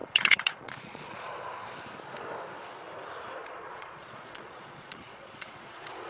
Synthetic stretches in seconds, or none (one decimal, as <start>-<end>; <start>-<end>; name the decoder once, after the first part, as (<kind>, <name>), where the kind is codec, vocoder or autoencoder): 0.0-1.4 (vocoder, Vocos); 3.4-6.1